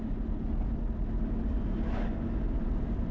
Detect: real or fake real